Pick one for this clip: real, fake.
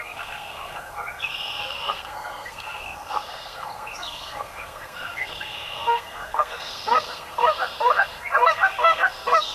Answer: fake